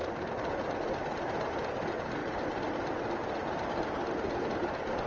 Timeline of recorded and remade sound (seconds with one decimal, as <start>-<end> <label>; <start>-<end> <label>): 0.0-5.1 recorded